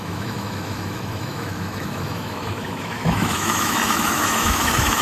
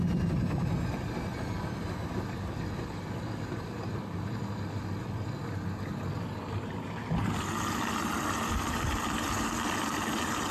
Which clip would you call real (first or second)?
second